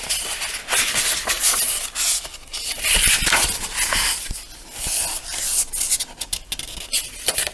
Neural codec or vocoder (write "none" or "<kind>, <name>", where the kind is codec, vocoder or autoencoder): none